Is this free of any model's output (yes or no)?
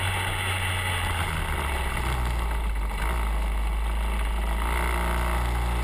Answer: yes